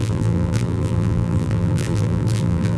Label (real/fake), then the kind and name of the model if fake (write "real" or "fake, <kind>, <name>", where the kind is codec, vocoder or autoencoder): fake, vocoder, BigVGAN v2